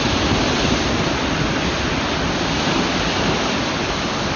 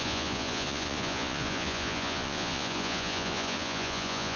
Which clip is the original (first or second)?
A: first